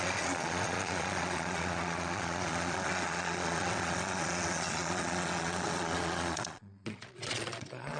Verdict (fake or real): fake